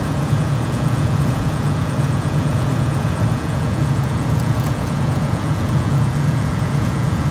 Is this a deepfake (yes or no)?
yes